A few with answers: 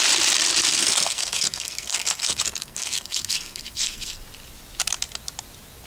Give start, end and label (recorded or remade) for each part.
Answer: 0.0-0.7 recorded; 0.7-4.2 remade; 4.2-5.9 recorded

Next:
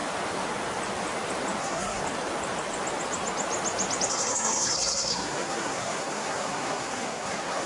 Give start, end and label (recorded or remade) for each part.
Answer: 0.0-1.6 recorded; 1.6-2.0 remade; 2.0-4.1 recorded; 4.1-7.7 remade

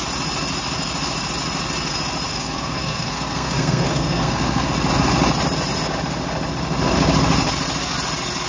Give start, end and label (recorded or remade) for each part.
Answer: 0.0-2.3 recorded; 2.3-4.7 remade; 4.7-8.5 recorded

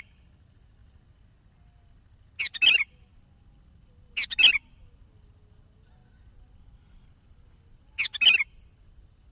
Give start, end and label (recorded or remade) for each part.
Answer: 0.0-9.3 recorded

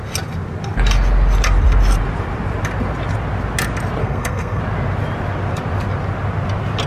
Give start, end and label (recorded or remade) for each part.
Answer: 0.0-4.0 recorded; 4.0-4.6 remade; 4.6-6.9 recorded

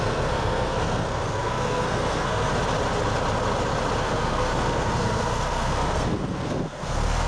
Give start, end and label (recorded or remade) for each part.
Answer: 0.0-2.5 remade; 2.5-4.0 recorded; 4.0-7.3 remade

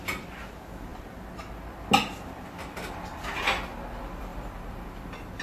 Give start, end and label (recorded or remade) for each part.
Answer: 0.0-5.4 recorded